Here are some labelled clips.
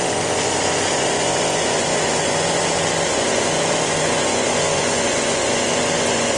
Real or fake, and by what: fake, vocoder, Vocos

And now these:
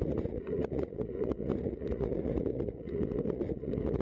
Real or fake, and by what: fake, vocoder, Vocos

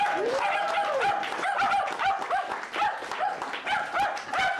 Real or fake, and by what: real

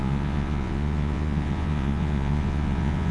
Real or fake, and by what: fake, vocoder, Vocos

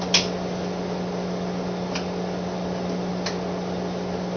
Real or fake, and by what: real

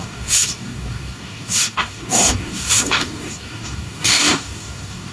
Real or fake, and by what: fake, codec, DAC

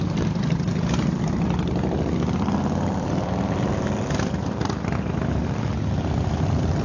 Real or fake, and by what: real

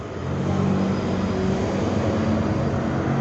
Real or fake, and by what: real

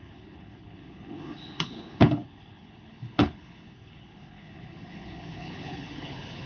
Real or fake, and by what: fake, codec, HILCodec